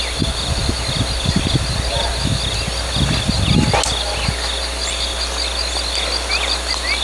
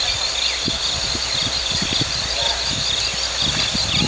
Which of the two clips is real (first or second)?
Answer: first